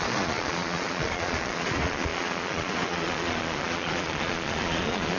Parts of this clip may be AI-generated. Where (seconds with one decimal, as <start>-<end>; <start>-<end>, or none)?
0.0-5.2